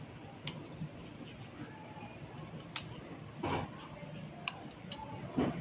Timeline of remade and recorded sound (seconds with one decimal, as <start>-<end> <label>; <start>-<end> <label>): 0.0-5.6 recorded